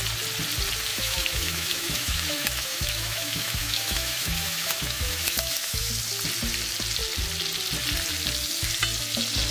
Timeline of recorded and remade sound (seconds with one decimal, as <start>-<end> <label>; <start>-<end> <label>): 0.0-0.9 recorded; 0.9-5.9 remade; 5.9-9.5 recorded